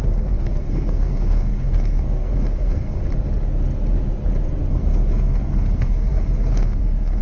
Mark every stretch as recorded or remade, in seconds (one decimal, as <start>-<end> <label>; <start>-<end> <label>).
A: 0.0-3.0 remade; 3.0-4.7 recorded; 4.7-7.2 remade